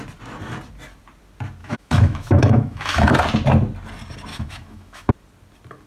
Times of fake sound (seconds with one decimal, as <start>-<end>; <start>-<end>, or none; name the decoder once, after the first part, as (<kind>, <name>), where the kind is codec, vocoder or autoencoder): 1.6-3.2 (autoencoder, DAC-VAE); 4.3-5.1

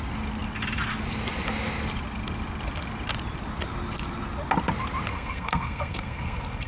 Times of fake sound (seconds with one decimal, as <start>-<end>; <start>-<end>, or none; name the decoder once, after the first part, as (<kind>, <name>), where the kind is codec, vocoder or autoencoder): 5.1-6.7 (codec, SNAC)

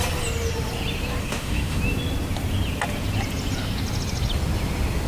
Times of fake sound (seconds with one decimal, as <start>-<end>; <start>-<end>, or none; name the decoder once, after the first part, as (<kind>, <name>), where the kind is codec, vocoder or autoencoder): 1.2-1.8 (autoencoder, DAC-VAE)

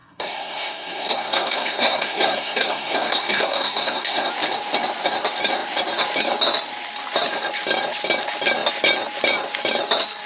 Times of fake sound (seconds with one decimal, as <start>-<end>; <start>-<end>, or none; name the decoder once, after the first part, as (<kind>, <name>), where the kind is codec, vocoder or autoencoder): 0.0-4.3 (codec, SNAC)

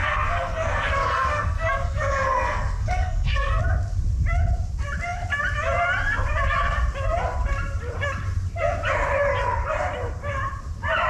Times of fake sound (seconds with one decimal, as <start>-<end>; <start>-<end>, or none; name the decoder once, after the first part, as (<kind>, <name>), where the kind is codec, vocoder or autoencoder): 0.0-3.6 (codec, SNAC)

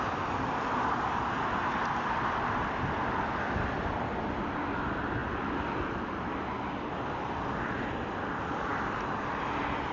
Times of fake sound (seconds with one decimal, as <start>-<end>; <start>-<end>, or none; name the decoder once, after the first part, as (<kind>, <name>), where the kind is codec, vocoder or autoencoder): none

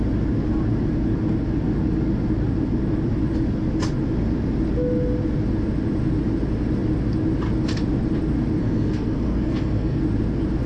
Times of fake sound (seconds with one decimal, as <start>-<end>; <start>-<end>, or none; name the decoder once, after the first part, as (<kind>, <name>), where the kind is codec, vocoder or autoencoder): 8.6-10.0 (codec, SNAC)